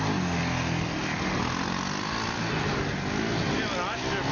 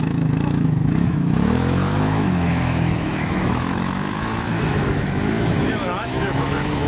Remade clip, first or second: second